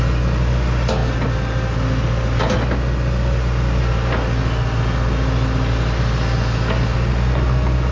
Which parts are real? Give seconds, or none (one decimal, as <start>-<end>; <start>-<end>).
0.0-7.9